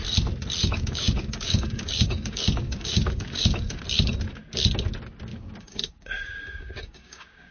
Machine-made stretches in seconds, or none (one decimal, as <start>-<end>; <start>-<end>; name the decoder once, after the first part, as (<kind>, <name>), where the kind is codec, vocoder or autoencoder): 0.6-3.8 (codec, DAC); 5.3-7.5